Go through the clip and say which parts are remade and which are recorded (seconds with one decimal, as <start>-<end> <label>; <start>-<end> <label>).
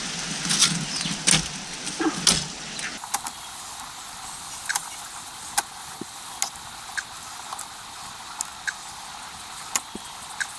0.0-10.6 recorded